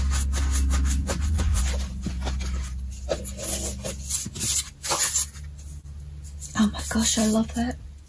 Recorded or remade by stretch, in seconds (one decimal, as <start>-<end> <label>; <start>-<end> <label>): 0.0-1.0 recorded; 1.0-1.6 remade; 1.6-8.1 recorded